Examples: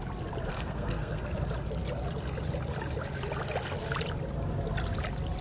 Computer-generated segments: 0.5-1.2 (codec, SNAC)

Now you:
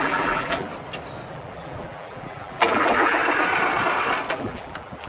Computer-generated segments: 0.0-0.7 (vocoder, BigVGAN v2); 1.3-3.2; 4.3-5.1

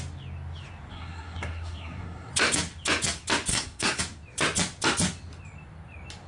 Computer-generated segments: 0.9-2.3 (codec, SNAC); 3.5-4.0

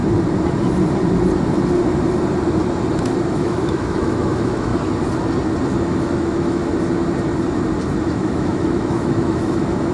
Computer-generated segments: 3.3-4.7 (autoencoder, DAC-VAE); 5.8-6.6; 8.0-9.9

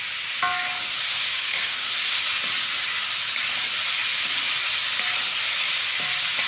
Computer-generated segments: 1.3-1.9 (codec, SNAC)

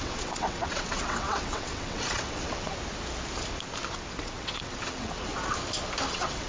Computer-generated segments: 0.0-2.7 (vocoder, WaveNeXt); 4.2-5.3; 6.1-6.5